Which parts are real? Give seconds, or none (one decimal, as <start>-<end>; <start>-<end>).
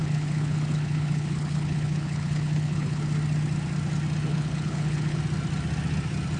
3.0-4.3; 5.2-6.4